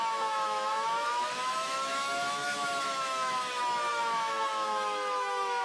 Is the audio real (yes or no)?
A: no